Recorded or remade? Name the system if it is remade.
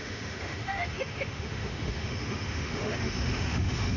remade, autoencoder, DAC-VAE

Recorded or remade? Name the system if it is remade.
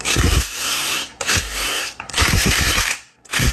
remade, codec, SNAC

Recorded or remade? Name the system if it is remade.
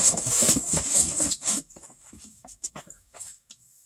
remade, codec, DAC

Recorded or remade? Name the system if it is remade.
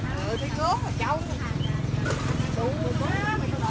remade, vocoder, BigVGAN v2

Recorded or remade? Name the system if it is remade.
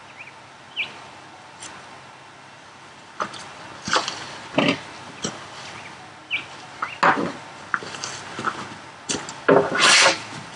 recorded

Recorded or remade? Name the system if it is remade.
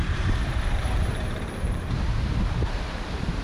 remade, vocoder, BigVGAN v2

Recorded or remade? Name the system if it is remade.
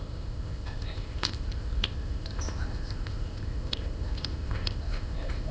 remade, codec, ZipCodec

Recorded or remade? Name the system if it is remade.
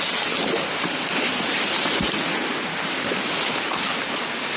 recorded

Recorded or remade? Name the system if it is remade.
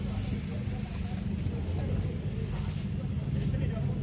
recorded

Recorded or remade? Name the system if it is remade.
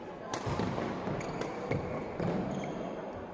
recorded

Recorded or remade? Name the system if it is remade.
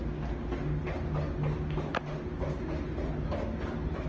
recorded